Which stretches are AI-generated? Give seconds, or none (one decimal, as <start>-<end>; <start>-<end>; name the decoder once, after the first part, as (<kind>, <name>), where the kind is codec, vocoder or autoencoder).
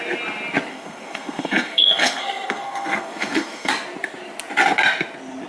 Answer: 0.7-3.7 (codec, SNAC)